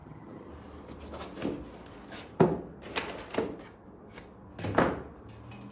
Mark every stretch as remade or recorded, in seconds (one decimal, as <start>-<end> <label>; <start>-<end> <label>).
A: 0.0-0.5 remade; 0.5-5.7 recorded